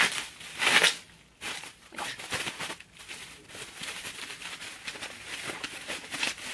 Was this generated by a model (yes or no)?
no